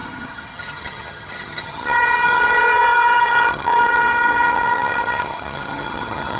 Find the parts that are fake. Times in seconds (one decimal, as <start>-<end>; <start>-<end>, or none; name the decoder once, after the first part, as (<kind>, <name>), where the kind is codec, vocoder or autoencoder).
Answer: 0.0-6.4 (vocoder, HiFi-GAN)